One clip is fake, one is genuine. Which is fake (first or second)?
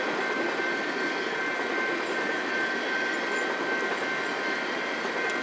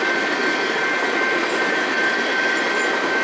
second